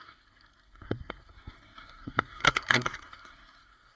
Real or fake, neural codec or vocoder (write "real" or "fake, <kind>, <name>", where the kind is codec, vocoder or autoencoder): fake, codec, SNAC